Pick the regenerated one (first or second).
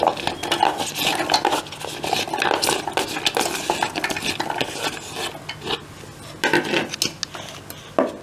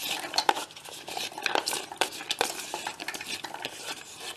second